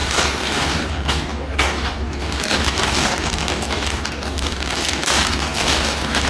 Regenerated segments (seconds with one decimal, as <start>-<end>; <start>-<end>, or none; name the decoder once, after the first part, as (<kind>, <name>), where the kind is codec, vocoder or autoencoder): 0.0-6.3 (codec, DAC)